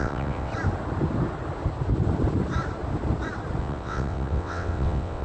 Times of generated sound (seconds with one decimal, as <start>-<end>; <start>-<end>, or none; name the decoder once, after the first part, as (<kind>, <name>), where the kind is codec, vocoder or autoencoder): 0.0-0.5 (vocoder, WaveNeXt); 3.6-5.2